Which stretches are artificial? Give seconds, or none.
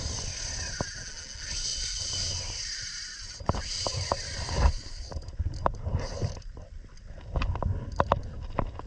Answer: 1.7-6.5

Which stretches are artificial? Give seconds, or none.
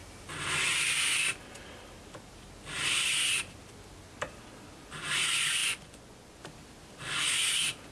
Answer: 5.6-6.4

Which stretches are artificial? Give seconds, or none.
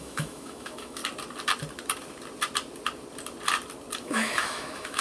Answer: 0.0-1.0; 4.0-5.0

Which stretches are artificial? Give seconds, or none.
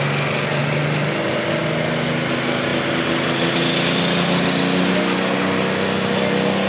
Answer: none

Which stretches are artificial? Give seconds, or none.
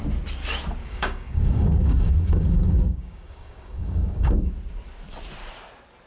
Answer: 0.8-4.5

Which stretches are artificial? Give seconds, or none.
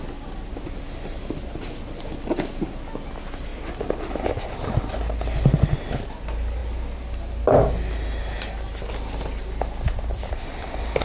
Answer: none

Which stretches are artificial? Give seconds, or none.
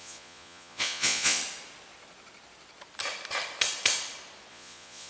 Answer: 0.0-1.4; 4.5-5.1